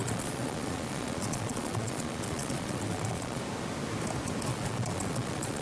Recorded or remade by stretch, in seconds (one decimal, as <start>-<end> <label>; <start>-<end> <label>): 0.0-3.4 remade; 3.4-4.5 recorded; 4.5-5.6 remade